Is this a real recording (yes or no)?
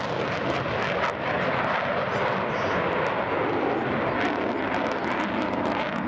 yes